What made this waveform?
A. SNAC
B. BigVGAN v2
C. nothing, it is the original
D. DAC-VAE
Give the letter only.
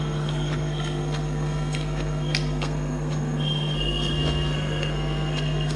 A